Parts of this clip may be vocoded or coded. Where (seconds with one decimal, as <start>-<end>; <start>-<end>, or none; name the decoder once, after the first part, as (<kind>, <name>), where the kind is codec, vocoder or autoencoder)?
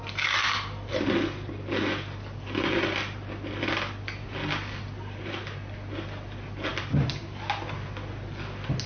none